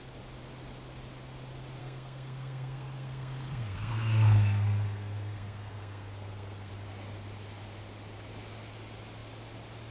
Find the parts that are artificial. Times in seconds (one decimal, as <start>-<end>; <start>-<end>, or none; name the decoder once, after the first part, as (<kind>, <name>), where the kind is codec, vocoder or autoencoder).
1.8-6.7 (codec, SNAC)